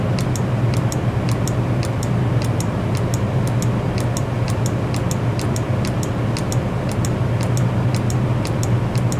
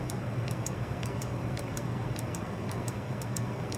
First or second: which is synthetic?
second